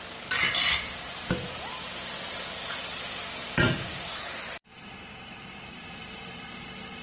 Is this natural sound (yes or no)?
no